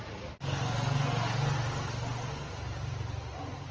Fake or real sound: real